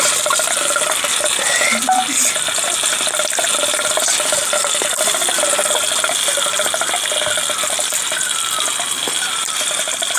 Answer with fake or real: real